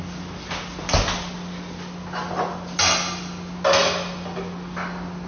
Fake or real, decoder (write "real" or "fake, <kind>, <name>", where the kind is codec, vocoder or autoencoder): real